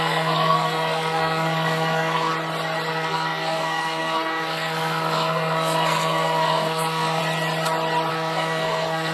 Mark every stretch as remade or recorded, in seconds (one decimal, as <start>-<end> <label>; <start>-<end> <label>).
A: 0.0-2.3 remade; 2.3-2.9 recorded; 2.9-7.2 remade; 7.2-8.1 recorded; 8.1-9.1 remade